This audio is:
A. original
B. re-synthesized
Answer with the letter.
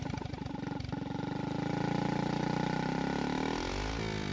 A